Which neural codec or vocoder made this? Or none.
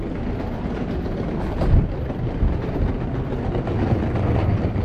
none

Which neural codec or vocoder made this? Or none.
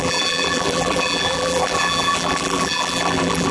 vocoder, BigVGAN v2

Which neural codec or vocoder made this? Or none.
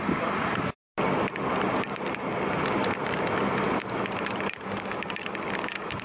none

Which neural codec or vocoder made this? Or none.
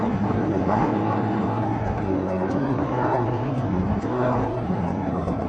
codec, SNAC